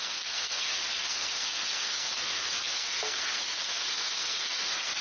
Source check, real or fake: fake